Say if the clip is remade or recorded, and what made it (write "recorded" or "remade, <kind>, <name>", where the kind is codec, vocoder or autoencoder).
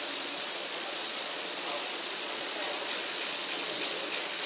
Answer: remade, vocoder, Vocos